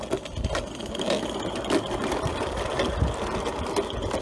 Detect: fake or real real